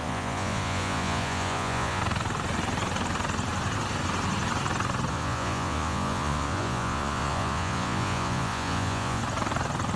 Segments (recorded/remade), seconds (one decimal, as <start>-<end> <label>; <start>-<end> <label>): 0.0-2.0 remade; 2.0-5.1 recorded; 5.1-9.2 remade; 9.2-10.0 recorded